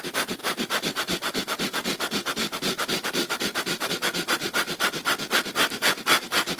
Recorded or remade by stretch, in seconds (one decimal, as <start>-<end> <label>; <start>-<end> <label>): 0.0-0.4 recorded; 0.4-3.9 remade; 3.9-6.6 recorded

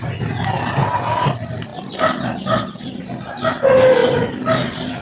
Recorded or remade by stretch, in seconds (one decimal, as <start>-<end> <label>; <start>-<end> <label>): 0.0-4.0 recorded; 4.0-5.0 remade

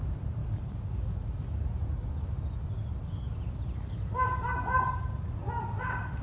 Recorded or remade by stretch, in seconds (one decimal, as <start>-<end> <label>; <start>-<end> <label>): 0.0-6.2 recorded

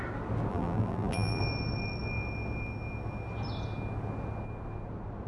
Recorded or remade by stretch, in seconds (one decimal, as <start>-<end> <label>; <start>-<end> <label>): 0.0-0.5 recorded; 0.5-1.4 remade; 1.4-5.3 recorded

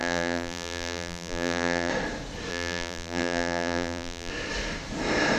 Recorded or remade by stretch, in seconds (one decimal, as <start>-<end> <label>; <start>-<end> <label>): 0.0-1.9 remade; 1.9-2.5 recorded; 2.5-4.3 remade; 4.3-5.4 recorded